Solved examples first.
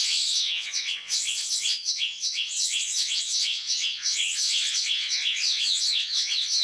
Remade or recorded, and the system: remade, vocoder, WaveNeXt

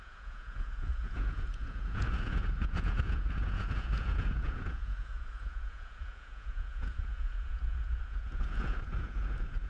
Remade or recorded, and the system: remade, vocoder, Vocos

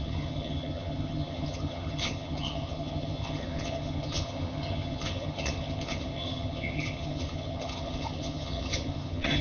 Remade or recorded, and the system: remade, vocoder, HiFi-GAN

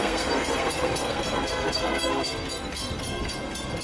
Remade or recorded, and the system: remade, codec, SNAC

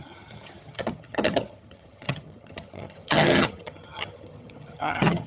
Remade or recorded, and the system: remade, vocoder, HiFi-GAN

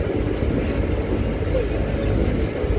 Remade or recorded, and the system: recorded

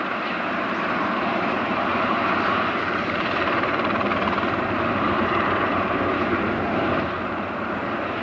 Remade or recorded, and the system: remade, vocoder, BigVGAN v2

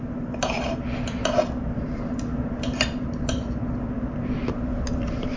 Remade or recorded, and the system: recorded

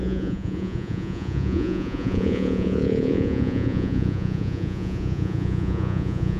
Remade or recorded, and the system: remade, vocoder, Vocos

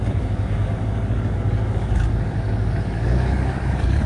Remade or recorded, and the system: remade, codec, DAC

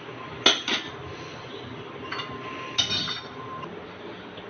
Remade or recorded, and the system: recorded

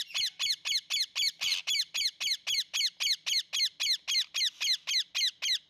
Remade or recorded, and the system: recorded